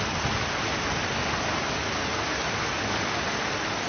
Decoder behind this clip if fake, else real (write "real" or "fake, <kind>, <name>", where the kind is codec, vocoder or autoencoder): real